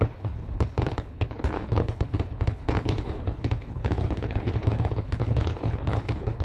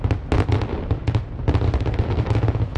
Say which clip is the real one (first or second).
second